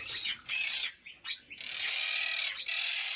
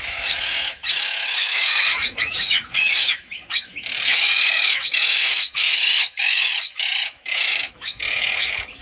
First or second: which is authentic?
first